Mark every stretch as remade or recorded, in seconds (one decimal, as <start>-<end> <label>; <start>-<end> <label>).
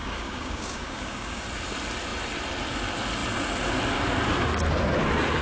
0.0-1.4 remade; 1.4-5.4 recorded